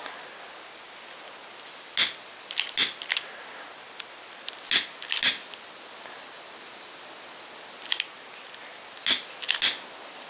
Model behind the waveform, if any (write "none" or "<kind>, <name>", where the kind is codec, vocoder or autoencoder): none